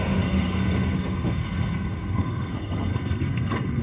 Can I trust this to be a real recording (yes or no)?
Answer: no